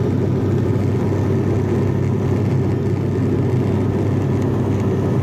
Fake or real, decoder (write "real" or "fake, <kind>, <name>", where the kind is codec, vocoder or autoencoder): real